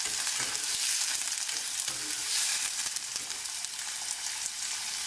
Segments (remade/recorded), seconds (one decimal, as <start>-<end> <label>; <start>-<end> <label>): 0.0-2.2 recorded; 2.2-3.1 remade; 3.1-5.1 recorded